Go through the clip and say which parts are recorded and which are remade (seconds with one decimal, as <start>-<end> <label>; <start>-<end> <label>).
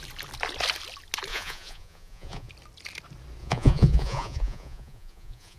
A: 0.0-1.3 recorded; 1.3-2.5 remade; 2.5-3.4 recorded; 3.4-5.6 remade